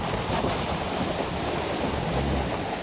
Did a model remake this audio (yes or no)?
no